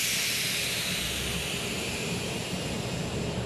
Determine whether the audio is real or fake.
real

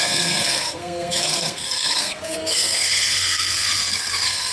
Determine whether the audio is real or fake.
fake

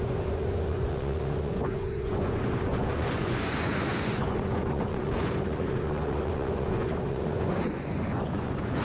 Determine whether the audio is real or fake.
fake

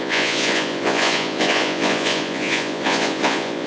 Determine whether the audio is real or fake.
fake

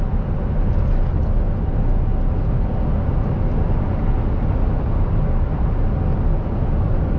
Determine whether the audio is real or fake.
real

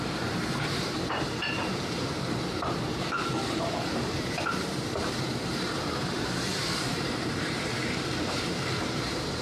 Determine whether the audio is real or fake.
fake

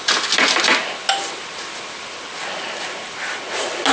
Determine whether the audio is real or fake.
real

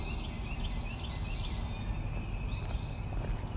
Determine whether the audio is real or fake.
real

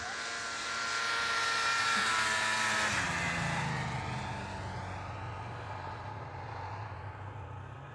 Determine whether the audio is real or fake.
real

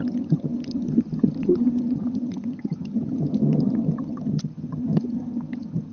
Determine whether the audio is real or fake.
fake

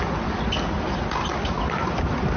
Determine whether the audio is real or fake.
real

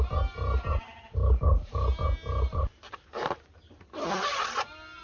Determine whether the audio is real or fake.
real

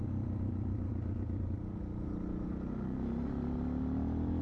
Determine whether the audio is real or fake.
real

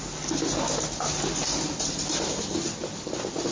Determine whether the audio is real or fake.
real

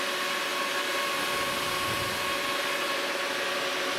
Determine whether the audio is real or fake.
real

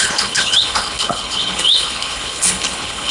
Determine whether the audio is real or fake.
fake